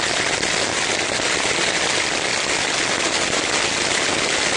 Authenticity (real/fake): real